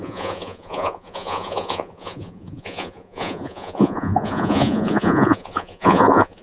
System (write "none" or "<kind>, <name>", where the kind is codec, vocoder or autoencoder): vocoder, Vocos